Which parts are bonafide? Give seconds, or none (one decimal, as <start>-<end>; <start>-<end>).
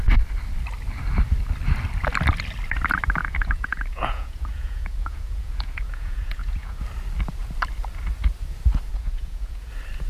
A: 0.0-3.2; 6.8-8.9; 9.7-10.1